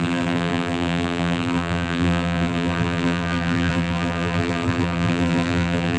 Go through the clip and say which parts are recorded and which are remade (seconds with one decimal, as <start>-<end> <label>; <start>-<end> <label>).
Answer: 0.0-6.0 remade